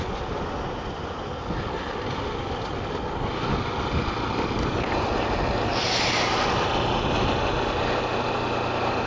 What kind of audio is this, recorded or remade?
recorded